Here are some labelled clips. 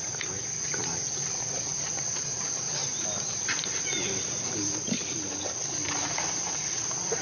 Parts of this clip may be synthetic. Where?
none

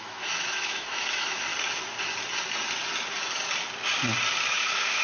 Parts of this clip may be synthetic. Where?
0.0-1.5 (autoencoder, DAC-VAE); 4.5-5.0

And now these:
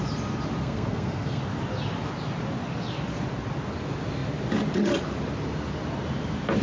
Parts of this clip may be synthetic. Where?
0.6-1.4 (codec, SNAC)

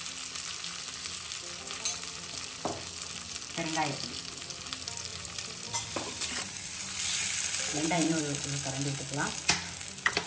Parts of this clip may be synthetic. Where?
5.1-8.2 (vocoder, BigVGAN v2)

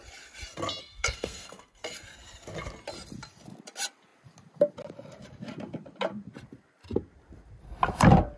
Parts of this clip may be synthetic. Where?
0.8-1.8 (codec, SNAC)

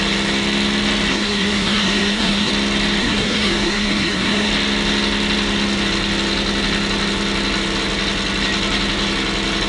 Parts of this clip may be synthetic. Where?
1.1-2.5 (codec, SNAC); 3.0-4.5